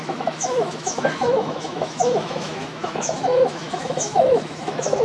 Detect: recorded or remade remade